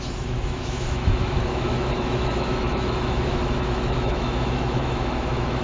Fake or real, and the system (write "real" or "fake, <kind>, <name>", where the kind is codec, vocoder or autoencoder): fake, autoencoder, DAC-VAE